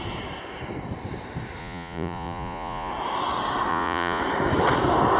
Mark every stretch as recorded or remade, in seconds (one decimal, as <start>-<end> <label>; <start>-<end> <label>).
0.0-1.6 recorded; 1.6-2.9 remade; 2.9-3.7 recorded; 3.7-4.2 remade; 4.2-5.2 recorded